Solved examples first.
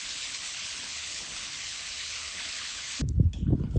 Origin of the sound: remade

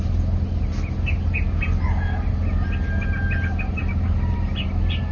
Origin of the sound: recorded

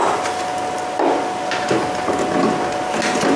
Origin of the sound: recorded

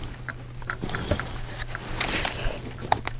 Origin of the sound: remade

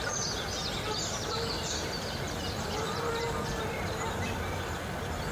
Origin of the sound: recorded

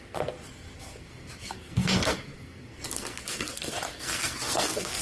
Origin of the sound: remade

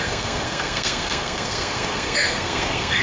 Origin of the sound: remade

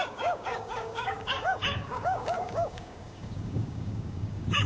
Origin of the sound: remade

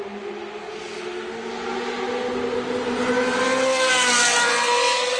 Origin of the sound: recorded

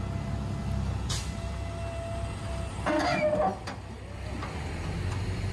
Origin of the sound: recorded